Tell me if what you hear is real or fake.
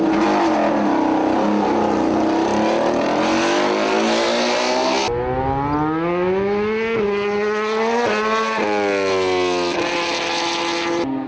real